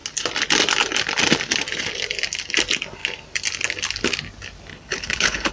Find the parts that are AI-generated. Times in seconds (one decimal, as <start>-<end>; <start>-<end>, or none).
4.7-5.5